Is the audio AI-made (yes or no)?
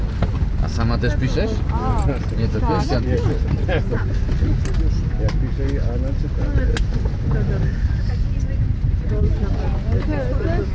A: no